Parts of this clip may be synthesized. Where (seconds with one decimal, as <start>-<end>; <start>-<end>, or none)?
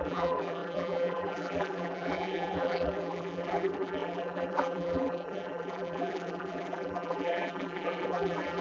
0.0-8.6